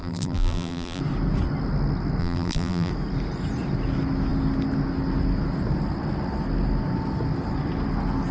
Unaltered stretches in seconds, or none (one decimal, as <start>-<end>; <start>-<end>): 1.0-2.2; 2.9-8.3